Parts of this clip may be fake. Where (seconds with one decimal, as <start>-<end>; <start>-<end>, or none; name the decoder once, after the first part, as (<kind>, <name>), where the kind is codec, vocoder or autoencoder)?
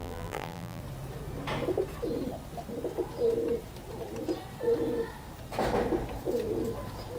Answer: 0.0-0.8 (vocoder, BigVGAN v2)